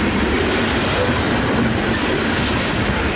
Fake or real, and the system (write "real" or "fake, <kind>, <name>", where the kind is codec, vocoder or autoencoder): real